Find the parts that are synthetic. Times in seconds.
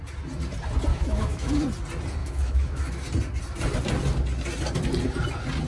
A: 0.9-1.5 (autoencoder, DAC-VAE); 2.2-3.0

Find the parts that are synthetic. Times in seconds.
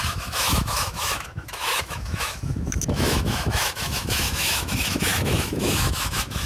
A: 0.0-6.5 (autoencoder, DAC-VAE)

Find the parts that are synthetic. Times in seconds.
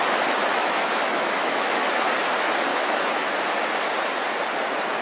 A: 0.5-2.1 (autoencoder, DAC-VAE); 2.7-3.4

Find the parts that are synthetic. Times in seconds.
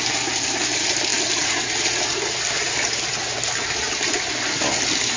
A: none